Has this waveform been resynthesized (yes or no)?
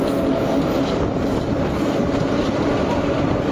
no